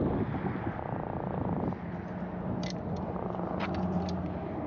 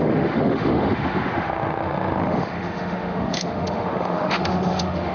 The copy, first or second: second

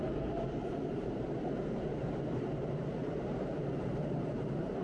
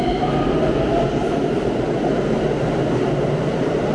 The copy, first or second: first